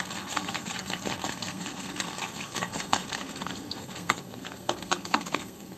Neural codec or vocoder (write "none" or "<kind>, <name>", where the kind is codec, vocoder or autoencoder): codec, SNAC